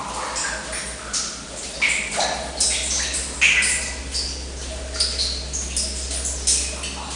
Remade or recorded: recorded